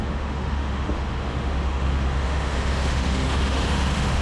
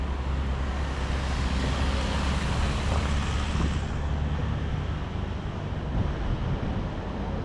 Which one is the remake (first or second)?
first